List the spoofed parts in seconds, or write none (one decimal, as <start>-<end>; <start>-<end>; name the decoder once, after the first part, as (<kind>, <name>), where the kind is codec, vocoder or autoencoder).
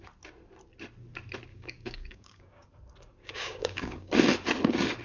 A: 1.5-2.7 (codec, DAC); 3.2-4.1